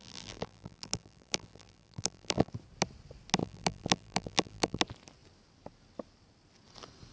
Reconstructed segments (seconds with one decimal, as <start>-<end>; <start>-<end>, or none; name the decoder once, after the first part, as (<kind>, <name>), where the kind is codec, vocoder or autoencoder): 0.0-2.5 (vocoder, BigVGAN v2); 3.4-4.8